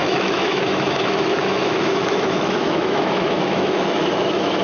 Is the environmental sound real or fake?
fake